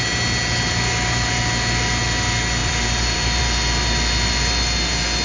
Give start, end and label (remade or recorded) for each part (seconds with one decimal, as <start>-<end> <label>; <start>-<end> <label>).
0.0-2.6 recorded; 2.6-3.4 remade; 3.4-5.2 recorded